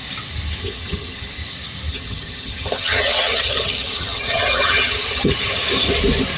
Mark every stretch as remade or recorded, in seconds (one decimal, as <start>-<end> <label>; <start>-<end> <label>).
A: 0.0-0.6 recorded; 0.6-1.4 remade; 1.4-1.9 recorded; 1.9-5.6 remade; 5.6-6.4 recorded